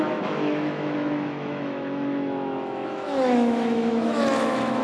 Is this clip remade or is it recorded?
remade